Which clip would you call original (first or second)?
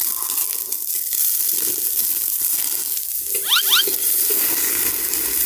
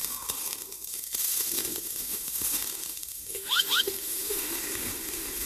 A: first